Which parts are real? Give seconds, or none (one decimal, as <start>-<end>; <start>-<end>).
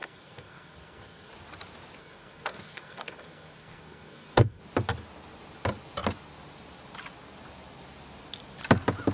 1.3-2.0; 4.6-9.1